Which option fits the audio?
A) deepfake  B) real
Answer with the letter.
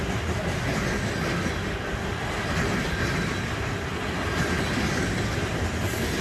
B